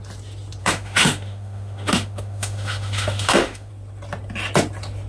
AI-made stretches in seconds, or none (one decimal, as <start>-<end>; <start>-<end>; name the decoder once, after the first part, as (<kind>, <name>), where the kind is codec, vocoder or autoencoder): 0.6-3.7 (autoencoder, DAC-VAE)